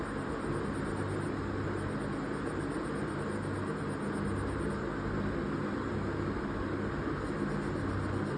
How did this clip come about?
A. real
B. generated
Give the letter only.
A